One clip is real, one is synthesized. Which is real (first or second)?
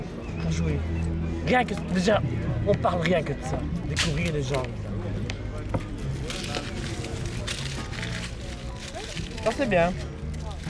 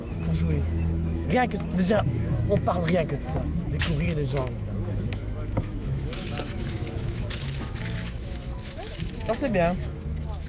first